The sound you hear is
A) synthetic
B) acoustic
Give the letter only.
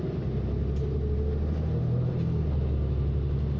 B